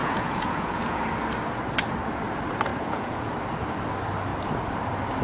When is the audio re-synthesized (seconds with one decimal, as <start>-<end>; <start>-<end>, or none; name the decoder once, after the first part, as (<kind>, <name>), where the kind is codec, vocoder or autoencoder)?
0.0-1.0 (vocoder, Vocos); 2.7-3.3